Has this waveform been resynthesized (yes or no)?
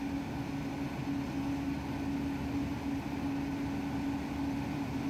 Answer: no